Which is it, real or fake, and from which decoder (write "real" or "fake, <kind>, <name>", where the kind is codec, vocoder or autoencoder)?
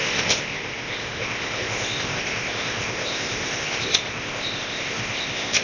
fake, codec, ZipCodec